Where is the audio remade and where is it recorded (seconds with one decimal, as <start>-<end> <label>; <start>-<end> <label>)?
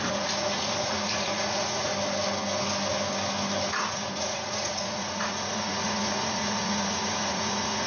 0.0-1.9 remade; 1.9-3.7 recorded; 3.7-7.9 remade